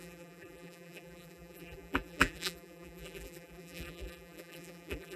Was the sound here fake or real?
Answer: fake